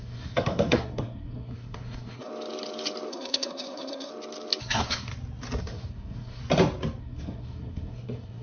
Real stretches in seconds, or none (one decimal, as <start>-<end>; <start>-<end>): 2.3-3.1; 4.1-4.6; 5.1-5.6; 6.4-7.0